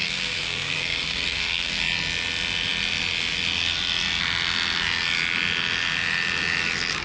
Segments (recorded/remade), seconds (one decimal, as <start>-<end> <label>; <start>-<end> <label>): 0.0-1.8 remade; 1.8-7.0 recorded